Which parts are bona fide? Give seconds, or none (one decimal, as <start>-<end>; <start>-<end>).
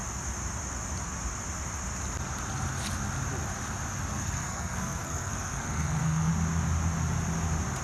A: 0.0-4.1; 6.3-7.8